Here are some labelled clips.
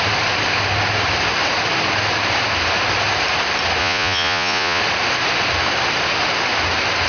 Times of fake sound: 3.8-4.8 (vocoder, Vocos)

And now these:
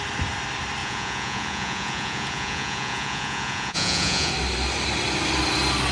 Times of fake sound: 0.8-4.3 (vocoder, Vocos)

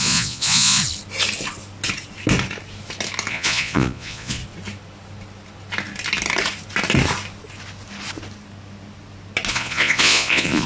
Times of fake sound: 0.0-0.8 (vocoder, Vocos); 3.3-4.4; 9.5-10.7

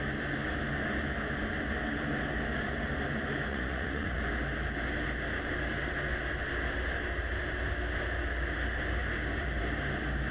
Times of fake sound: 3.5-4.2 (vocoder, Vocos)

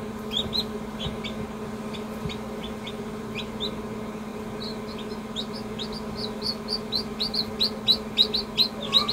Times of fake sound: none